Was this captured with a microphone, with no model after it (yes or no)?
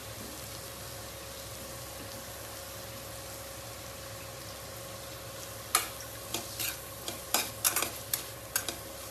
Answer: yes